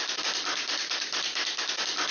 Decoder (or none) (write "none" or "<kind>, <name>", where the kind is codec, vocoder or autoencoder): vocoder, BigVGAN v2